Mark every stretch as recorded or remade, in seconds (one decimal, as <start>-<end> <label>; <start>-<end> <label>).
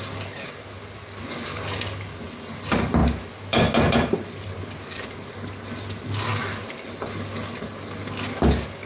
0.0-8.9 recorded